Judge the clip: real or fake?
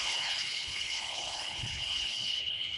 fake